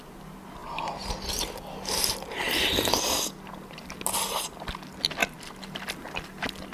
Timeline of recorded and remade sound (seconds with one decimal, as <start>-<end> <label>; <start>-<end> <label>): 0.0-6.7 recorded